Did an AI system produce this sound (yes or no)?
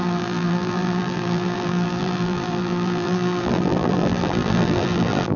yes